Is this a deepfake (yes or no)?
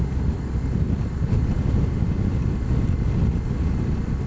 no